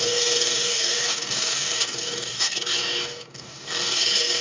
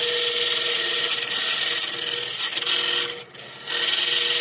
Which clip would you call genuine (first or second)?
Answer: second